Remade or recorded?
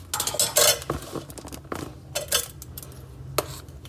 recorded